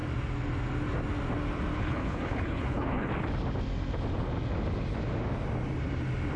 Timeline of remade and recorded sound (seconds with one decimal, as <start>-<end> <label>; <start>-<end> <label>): 0.0-1.8 recorded; 1.8-3.1 remade; 3.1-6.4 recorded